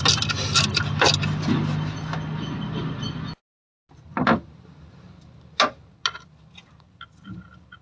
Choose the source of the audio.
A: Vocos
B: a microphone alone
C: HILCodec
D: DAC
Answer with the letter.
B